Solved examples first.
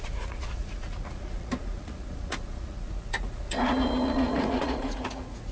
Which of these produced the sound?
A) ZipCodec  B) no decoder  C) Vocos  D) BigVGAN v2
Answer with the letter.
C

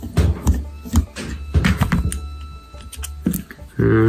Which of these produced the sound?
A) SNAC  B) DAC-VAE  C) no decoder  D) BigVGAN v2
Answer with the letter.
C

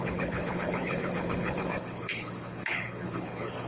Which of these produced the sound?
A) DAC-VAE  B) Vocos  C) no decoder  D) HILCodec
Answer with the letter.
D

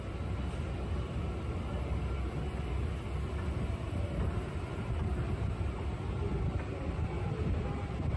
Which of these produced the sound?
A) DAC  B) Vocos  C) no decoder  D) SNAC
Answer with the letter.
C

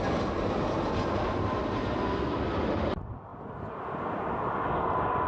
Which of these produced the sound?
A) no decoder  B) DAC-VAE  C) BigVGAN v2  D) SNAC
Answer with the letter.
A